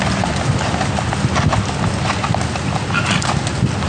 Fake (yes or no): no